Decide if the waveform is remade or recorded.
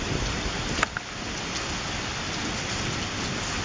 remade